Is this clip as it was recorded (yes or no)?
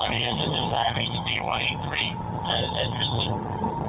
no